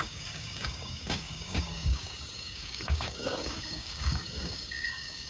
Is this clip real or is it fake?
fake